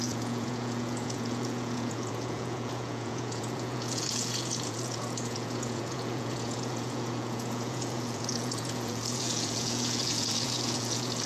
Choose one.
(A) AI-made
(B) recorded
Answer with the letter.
A